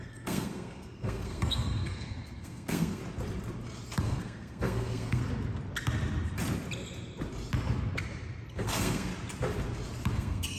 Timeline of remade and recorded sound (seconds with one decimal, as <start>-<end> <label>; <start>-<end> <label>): 0.0-3.0 remade; 3.0-4.0 recorded; 4.0-5.2 remade; 5.2-8.5 recorded; 8.5-9.1 remade; 9.1-10.1 recorded; 10.1-10.6 remade